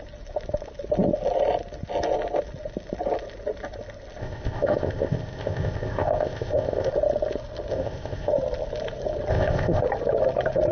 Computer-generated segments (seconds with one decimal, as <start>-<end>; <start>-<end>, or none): 4.2-6.9; 7.7-8.3; 9.3-9.8